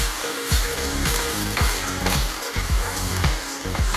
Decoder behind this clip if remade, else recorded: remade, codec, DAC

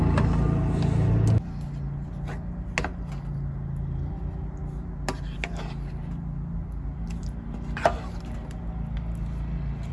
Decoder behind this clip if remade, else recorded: recorded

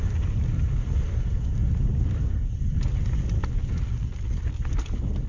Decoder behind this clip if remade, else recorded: recorded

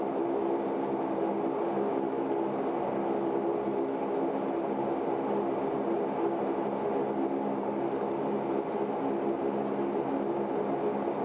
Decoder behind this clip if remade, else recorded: recorded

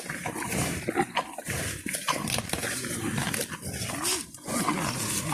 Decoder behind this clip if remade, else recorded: recorded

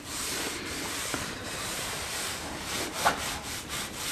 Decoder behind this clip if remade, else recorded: remade, vocoder, BigVGAN v2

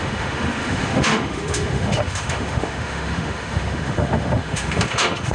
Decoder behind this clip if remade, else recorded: remade, autoencoder, DAC-VAE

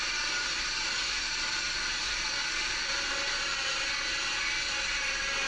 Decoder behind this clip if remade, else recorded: recorded